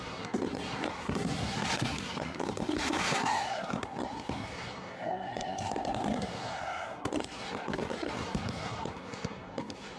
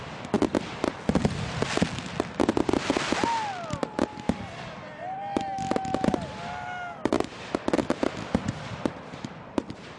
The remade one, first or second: first